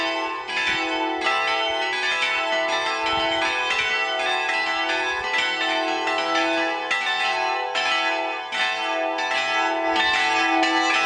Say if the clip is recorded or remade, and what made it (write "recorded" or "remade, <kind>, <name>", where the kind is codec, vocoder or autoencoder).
recorded